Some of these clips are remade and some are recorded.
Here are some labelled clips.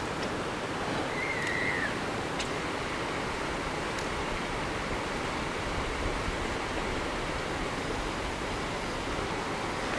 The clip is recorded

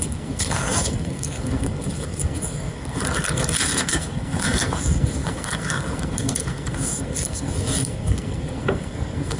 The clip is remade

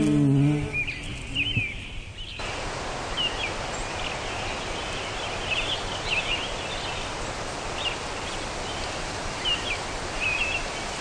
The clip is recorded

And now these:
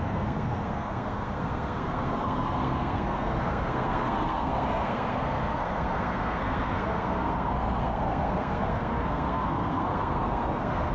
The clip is remade